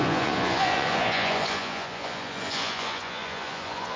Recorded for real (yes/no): no